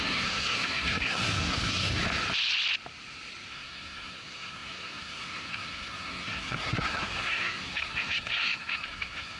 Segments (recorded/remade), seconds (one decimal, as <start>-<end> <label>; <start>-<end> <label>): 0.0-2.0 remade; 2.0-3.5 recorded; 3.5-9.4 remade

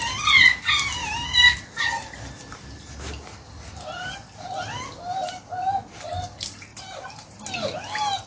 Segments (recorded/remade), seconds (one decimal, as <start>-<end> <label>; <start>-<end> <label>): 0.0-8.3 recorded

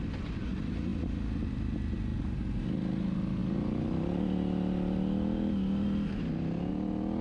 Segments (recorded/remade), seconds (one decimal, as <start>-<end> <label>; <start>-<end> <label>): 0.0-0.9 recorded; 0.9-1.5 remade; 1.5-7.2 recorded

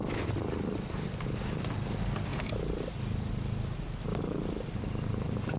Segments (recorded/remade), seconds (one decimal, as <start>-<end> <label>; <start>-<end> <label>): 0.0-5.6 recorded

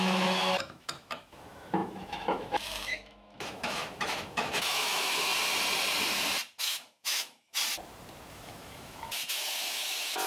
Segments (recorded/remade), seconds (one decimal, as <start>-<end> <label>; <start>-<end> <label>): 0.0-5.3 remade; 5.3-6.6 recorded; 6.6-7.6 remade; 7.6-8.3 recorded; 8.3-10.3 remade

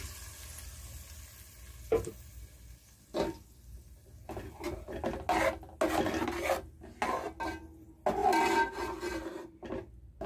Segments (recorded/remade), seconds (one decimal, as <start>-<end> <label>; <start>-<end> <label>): 0.0-10.3 recorded